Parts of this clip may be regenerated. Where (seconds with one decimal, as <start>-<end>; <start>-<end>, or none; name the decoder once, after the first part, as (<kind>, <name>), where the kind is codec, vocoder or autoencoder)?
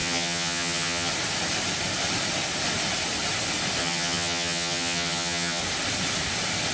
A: 0.0-1.1 (vocoder, HiFi-GAN); 3.8-5.6